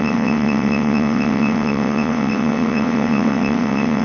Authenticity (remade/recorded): remade